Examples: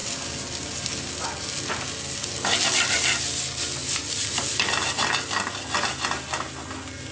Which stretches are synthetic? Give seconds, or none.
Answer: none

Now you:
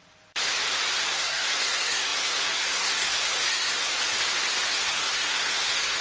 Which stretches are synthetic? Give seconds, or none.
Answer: 1.0-3.9 (codec, SNAC); 4.7-6.0